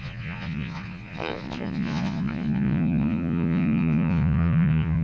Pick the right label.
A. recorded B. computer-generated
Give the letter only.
B